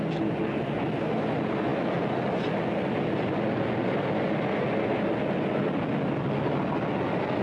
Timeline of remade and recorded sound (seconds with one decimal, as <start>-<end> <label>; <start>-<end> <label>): 0.0-7.4 recorded